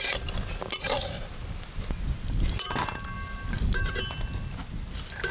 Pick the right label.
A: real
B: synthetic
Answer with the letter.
A